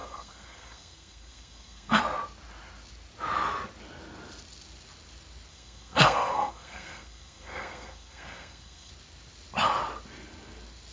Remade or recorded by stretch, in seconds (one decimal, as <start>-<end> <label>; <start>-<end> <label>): 0.0-2.0 remade; 2.0-5.5 recorded; 5.5-8.9 remade; 8.9-10.9 recorded